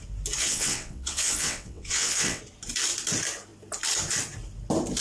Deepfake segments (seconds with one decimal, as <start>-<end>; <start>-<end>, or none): 0.4-2.4